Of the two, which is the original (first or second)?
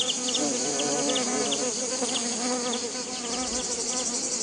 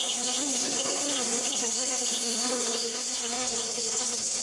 first